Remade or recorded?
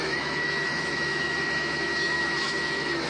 remade